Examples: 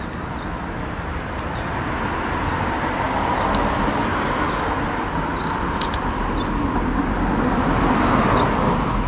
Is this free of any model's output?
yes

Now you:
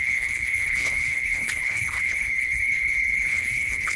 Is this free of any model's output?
no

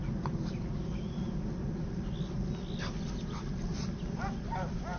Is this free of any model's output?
yes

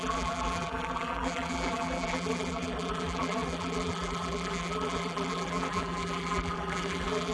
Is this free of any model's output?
no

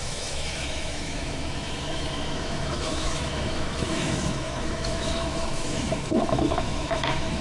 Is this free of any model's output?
no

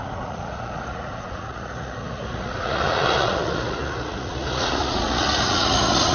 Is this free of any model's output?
no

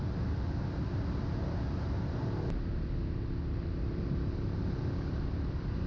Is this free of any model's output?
yes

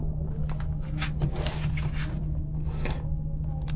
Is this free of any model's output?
yes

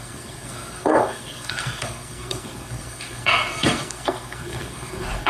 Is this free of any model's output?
no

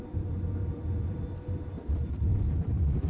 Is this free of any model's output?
yes